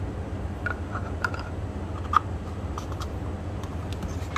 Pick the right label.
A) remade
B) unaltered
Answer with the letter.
B